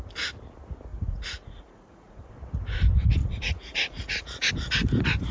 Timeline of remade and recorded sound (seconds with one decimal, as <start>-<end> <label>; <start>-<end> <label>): 0.0-0.9 recorded; 0.9-2.3 remade; 2.3-3.2 recorded; 3.2-4.5 remade; 4.5-5.3 recorded